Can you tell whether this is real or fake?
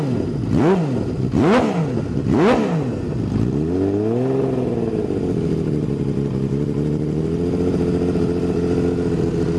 real